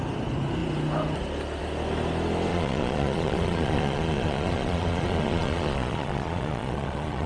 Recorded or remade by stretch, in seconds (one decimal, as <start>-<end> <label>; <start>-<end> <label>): 0.0-2.5 recorded; 2.5-7.3 remade